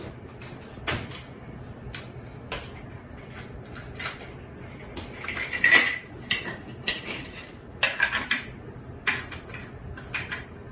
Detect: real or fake real